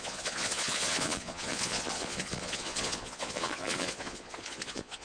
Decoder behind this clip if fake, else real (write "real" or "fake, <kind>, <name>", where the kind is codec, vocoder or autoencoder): fake, vocoder, Vocos